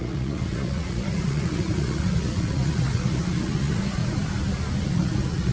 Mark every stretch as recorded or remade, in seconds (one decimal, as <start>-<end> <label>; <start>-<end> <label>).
0.0-4.0 remade; 4.0-4.8 recorded; 4.8-5.5 remade

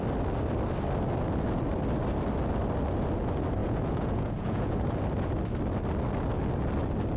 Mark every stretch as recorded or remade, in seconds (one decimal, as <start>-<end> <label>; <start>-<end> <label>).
0.0-3.6 recorded; 3.6-5.0 remade; 5.0-7.2 recorded

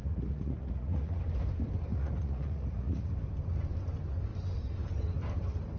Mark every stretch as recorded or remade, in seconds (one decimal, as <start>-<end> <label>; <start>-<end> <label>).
0.0-1.2 remade; 1.2-1.9 recorded; 1.9-3.1 remade; 3.1-5.8 recorded

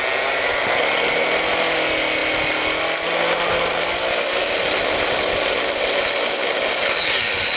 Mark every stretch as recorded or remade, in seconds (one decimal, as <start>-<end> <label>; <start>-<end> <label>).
0.0-7.6 recorded